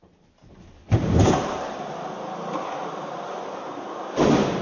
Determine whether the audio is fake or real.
fake